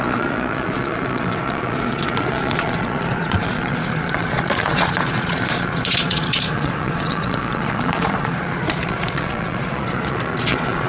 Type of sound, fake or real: fake